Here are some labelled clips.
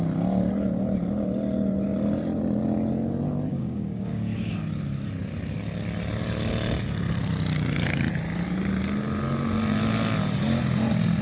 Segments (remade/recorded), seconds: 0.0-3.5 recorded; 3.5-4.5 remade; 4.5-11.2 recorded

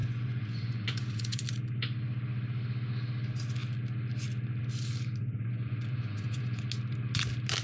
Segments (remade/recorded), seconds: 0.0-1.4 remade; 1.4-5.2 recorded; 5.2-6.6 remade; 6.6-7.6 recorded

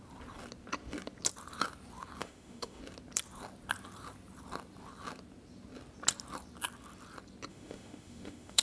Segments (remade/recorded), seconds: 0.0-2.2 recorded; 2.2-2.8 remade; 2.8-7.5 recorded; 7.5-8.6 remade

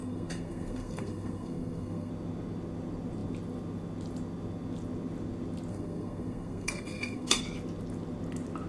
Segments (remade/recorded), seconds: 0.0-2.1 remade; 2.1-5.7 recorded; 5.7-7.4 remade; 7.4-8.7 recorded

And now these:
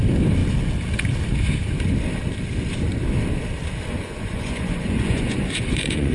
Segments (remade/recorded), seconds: 0.0-3.9 recorded; 3.9-6.1 remade

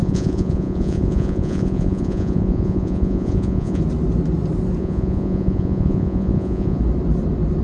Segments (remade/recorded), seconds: 0.0-3.8 remade; 3.8-4.8 recorded; 4.8-6.8 remade; 6.8-7.6 recorded

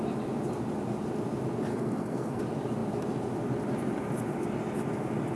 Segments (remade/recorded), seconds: 0.0-1.7 recorded; 1.7-2.4 remade; 2.4-5.4 recorded

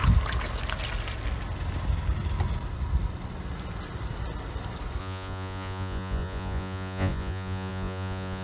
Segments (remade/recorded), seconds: 0.0-5.0 recorded; 5.0-8.4 remade